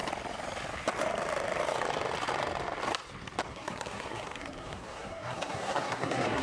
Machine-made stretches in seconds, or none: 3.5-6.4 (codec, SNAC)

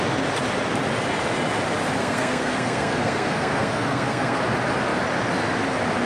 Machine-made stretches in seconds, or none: 2.0-4.4 (codec, SNAC)